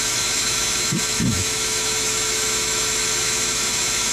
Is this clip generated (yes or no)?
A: yes